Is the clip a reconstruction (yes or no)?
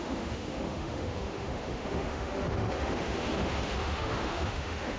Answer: yes